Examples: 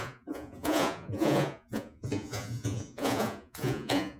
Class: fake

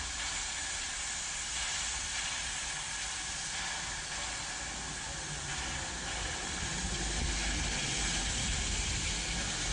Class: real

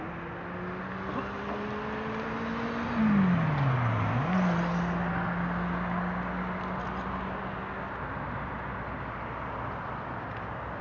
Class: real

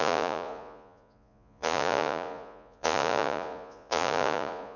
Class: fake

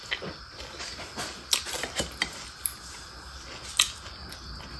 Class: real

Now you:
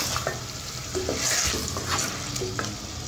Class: real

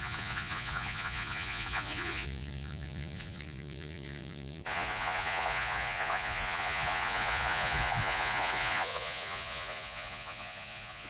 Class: fake